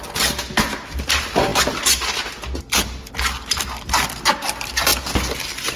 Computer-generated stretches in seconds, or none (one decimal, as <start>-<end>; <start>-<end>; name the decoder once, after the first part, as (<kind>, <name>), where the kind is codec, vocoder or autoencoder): none

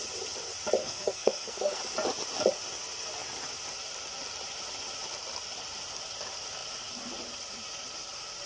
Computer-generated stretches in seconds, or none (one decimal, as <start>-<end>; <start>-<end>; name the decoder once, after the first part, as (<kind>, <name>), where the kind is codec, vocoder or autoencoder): 0.8-1.8 (codec, SNAC)

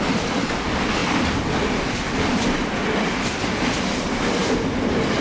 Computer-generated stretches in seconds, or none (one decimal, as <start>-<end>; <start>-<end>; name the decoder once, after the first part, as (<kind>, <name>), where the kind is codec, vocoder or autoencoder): none

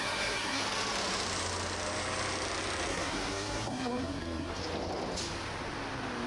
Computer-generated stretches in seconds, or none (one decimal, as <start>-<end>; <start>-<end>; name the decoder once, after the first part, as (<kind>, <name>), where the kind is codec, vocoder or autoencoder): 0.0-0.6 (codec, SNAC); 2.9-4.6

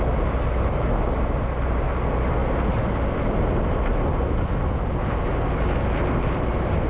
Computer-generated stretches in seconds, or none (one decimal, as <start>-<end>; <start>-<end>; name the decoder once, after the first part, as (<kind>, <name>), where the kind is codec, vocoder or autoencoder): none